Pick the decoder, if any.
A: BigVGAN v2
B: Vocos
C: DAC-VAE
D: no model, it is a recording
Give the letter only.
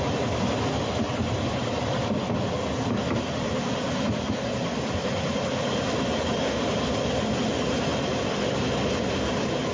D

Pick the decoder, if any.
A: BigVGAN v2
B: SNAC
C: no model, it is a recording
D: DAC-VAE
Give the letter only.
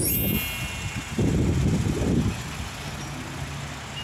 C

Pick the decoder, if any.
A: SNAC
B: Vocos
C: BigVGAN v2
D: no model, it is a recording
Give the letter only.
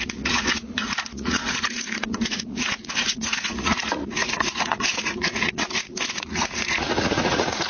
B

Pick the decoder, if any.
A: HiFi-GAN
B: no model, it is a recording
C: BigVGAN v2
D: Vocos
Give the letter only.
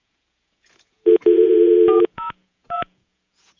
D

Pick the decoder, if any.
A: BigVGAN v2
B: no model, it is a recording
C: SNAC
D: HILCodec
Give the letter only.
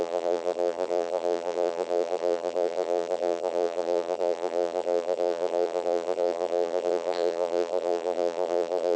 A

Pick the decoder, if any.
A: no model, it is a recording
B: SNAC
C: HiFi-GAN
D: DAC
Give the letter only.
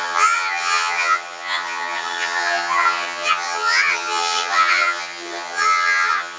C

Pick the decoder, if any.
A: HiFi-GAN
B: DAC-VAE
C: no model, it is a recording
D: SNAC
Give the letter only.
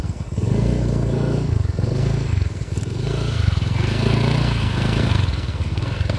D